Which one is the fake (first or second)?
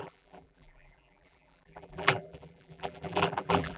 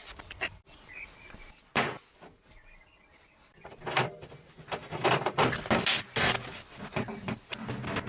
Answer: first